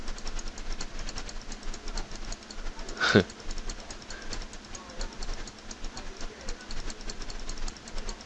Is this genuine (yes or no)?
yes